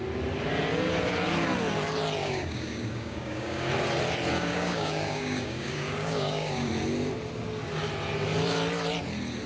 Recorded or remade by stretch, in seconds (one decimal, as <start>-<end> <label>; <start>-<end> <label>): 0.0-2.2 recorded; 2.2-3.7 remade; 3.7-4.3 recorded; 4.3-6.7 remade; 6.7-9.5 recorded